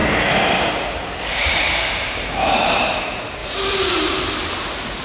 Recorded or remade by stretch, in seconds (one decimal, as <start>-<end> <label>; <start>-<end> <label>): 0.0-3.0 remade; 3.0-3.4 recorded; 3.4-4.3 remade; 4.3-5.0 recorded